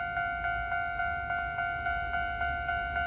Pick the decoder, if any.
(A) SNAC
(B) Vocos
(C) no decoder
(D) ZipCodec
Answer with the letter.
C